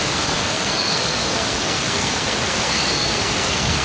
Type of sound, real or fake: fake